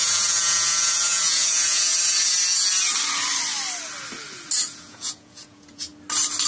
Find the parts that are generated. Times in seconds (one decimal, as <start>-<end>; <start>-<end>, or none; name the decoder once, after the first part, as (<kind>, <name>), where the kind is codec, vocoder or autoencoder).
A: 0.0-1.9 (vocoder, Vocos); 4.6-5.9